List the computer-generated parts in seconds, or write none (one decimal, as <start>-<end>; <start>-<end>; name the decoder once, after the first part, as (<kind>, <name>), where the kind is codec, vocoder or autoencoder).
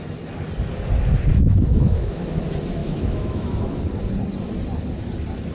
1.3-2.4 (autoencoder, DAC-VAE); 2.8-3.8